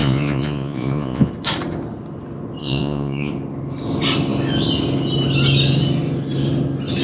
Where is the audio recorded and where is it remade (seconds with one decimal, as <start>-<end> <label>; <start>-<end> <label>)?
0.0-1.3 remade; 1.3-2.6 recorded; 2.6-3.3 remade; 3.3-7.0 recorded